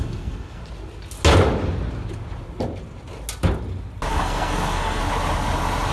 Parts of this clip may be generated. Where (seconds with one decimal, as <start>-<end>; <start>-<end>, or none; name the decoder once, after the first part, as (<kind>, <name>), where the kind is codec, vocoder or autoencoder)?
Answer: 0.0-0.6 (codec, SNAC); 4.1-5.0